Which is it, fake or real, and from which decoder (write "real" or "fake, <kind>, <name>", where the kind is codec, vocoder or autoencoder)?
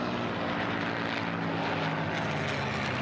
real